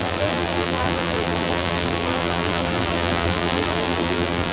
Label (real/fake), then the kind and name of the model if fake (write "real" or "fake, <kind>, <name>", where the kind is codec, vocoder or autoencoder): fake, vocoder, BigVGAN v2